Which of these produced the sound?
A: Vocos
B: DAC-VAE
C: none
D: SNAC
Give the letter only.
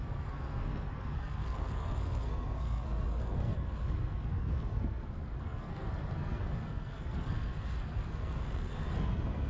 D